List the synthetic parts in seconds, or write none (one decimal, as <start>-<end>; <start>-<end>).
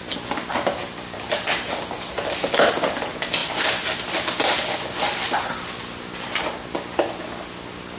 none